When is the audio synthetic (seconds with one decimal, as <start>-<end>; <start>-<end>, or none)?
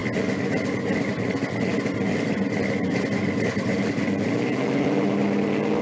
none